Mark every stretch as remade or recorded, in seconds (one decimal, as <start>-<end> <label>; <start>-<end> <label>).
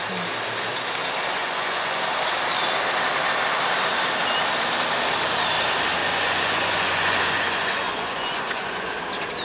0.0-1.4 recorded; 1.4-2.0 remade; 2.0-6.0 recorded; 6.0-8.9 remade; 8.9-9.4 recorded